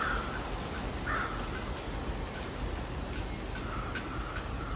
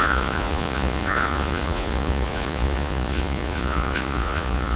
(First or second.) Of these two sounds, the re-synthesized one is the second